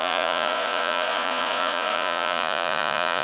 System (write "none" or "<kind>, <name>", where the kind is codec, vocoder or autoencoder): vocoder, Vocos